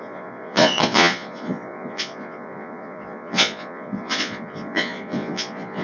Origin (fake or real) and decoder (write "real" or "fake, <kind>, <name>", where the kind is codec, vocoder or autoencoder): fake, vocoder, Vocos